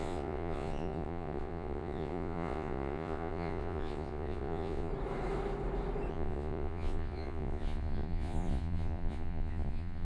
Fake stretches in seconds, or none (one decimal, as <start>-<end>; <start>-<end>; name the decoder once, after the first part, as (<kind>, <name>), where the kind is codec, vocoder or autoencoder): 0.0-4.9 (vocoder, Vocos); 6.1-10.0